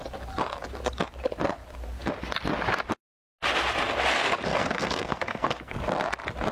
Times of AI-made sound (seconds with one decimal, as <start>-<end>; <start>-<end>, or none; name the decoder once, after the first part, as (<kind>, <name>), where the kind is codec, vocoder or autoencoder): 4.5-5.8 (codec, SNAC)